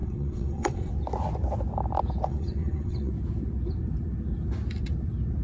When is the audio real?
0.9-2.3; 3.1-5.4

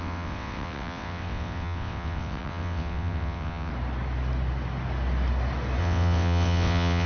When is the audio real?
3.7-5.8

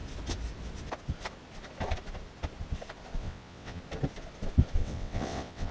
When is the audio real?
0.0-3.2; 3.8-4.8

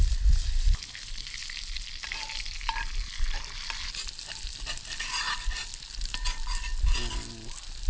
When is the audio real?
0.0-7.9

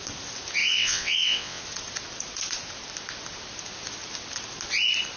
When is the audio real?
0.0-0.6; 1.6-5.2